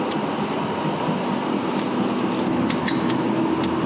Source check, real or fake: real